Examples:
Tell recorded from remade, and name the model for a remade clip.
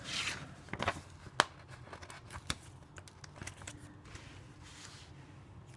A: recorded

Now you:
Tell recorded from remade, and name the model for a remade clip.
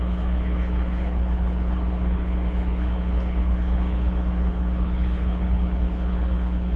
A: remade, codec, HILCodec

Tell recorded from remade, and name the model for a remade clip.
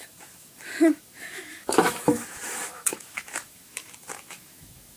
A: remade, autoencoder, DAC-VAE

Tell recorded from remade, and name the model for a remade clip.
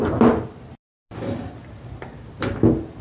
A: recorded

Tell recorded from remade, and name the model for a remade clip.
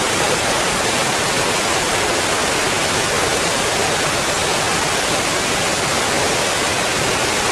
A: recorded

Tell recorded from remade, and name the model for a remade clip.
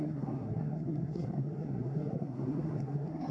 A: remade, codec, SNAC